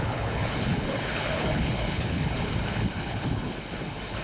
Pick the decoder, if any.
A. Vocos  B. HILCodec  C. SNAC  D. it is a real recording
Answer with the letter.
B